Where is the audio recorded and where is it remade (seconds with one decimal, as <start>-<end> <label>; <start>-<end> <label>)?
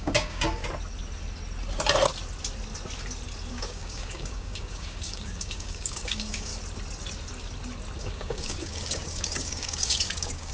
0.0-0.6 remade; 0.6-3.5 recorded; 3.5-6.5 remade; 6.5-8.0 recorded; 8.0-10.5 remade